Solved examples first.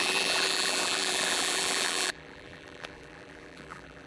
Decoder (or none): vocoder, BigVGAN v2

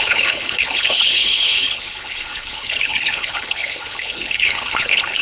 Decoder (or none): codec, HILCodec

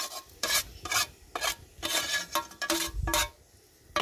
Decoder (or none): none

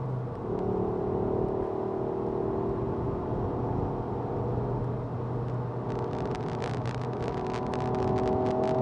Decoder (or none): none